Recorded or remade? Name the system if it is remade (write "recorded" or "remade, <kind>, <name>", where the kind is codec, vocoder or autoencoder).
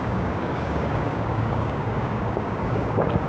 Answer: remade, codec, DAC